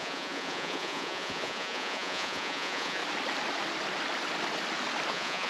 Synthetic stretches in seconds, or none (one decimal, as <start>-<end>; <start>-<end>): 0.0-3.0; 5.1-5.5